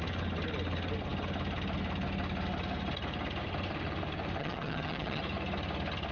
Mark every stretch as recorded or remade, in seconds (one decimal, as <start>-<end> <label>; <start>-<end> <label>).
0.0-4.4 recorded; 4.4-5.2 remade; 5.2-6.1 recorded